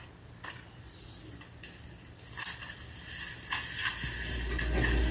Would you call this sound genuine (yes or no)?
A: yes